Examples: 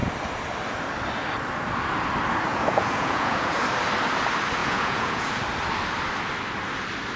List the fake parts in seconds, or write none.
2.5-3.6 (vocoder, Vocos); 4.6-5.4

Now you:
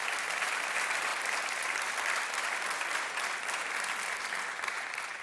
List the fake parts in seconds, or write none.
none

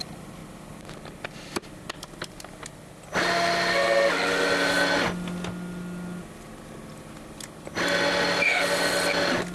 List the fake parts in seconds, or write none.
none